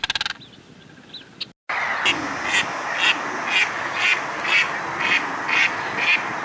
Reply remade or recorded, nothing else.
recorded